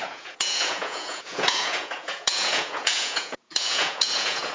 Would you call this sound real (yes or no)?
no